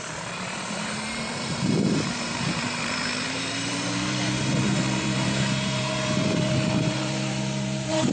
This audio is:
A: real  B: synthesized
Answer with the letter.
B